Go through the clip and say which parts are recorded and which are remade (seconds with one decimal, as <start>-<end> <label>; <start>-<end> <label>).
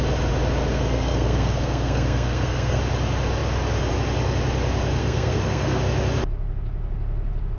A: 0.0-0.7 recorded; 0.7-2.8 remade; 2.8-5.0 recorded; 5.0-5.8 remade; 5.8-7.6 recorded